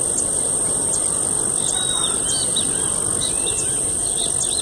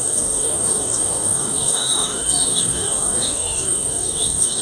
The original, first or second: first